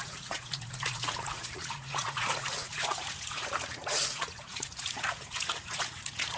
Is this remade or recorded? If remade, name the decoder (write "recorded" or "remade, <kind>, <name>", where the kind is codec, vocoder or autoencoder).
remade, vocoder, Vocos